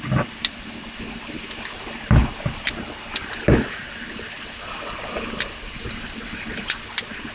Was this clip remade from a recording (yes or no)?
no